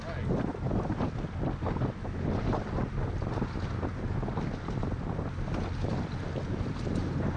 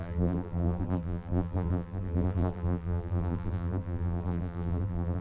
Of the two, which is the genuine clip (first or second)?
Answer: first